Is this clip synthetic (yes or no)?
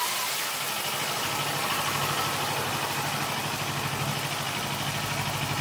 no